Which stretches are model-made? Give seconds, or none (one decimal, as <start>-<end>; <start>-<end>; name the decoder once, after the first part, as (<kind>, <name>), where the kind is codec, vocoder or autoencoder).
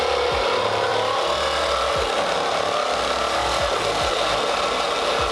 none